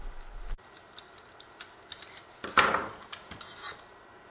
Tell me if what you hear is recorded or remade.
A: recorded